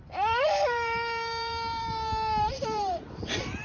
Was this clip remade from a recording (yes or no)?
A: yes